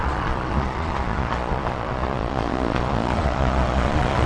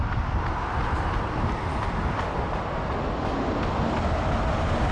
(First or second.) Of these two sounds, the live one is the second